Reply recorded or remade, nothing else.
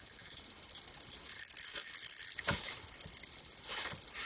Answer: remade